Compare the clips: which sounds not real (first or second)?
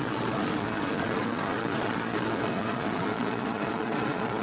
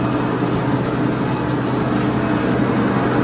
first